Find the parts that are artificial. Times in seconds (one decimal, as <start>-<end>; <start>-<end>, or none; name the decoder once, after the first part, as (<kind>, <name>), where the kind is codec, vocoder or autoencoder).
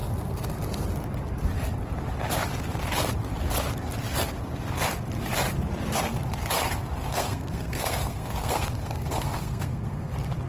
7.1-10.1 (codec, SNAC)